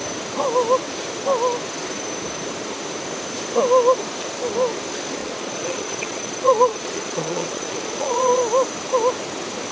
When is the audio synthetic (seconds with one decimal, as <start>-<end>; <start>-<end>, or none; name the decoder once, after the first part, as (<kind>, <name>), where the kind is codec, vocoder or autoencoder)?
5.2-8.4 (vocoder, Vocos)